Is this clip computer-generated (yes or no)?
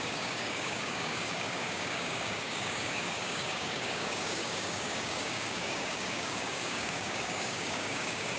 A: yes